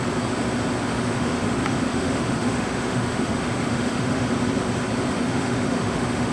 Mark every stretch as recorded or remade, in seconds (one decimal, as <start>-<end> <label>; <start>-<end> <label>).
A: 0.0-0.9 recorded; 0.9-4.3 remade; 4.3-5.1 recorded; 5.1-6.3 remade